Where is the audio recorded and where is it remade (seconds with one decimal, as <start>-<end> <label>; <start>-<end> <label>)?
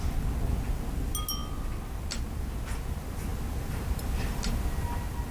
0.0-5.3 recorded